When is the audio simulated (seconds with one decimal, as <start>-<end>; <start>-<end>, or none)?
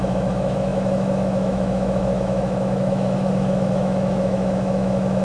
0.0-5.2